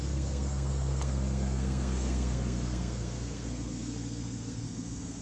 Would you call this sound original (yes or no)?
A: no